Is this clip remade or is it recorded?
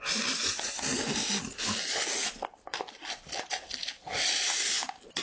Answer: recorded